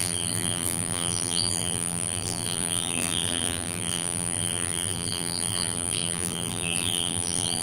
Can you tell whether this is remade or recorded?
remade